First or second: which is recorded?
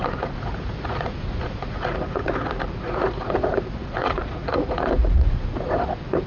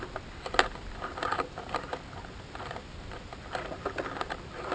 second